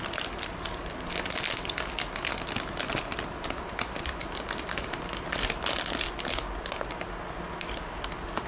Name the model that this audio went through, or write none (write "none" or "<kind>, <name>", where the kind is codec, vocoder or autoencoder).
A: none